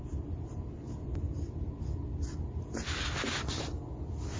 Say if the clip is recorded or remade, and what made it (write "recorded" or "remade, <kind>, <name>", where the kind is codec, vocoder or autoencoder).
recorded